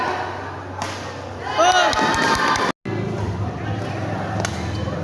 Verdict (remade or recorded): recorded